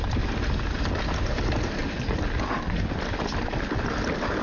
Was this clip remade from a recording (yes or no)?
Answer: no